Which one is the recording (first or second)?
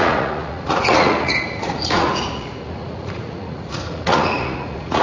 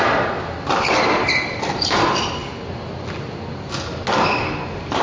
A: second